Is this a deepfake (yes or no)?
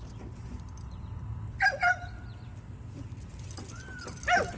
no